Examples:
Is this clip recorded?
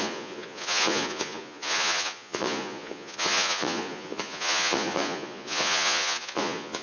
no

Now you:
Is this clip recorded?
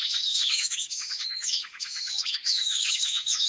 no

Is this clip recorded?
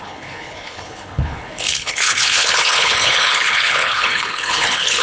no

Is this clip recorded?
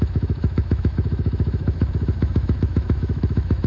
no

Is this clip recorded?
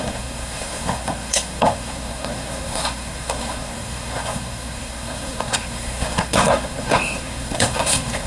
no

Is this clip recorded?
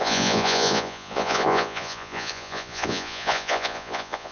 no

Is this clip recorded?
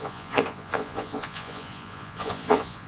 no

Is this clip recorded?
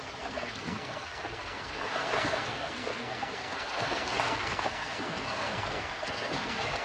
no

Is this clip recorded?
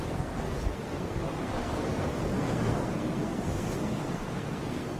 no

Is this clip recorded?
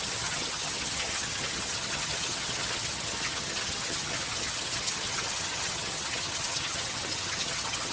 no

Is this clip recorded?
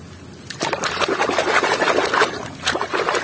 yes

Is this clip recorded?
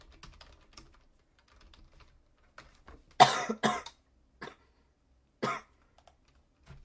yes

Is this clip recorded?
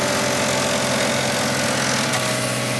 yes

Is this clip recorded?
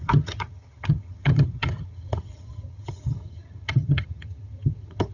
no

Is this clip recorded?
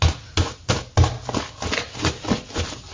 yes